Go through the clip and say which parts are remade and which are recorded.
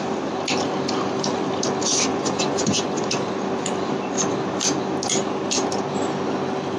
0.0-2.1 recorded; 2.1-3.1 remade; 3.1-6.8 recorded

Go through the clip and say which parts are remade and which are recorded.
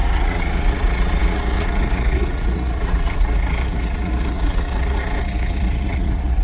0.0-6.4 remade